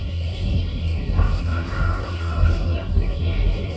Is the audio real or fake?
fake